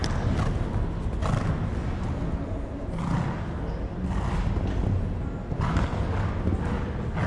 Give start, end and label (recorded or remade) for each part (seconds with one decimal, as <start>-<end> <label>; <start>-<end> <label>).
0.0-7.3 recorded